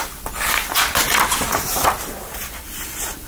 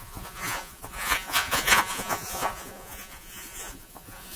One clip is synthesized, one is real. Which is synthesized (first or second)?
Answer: second